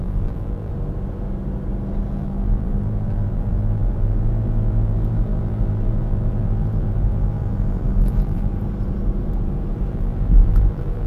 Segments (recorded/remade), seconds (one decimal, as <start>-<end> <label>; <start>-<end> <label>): 0.0-0.7 remade; 0.7-2.1 recorded; 2.1-8.5 remade; 8.5-9.9 recorded; 9.9-11.1 remade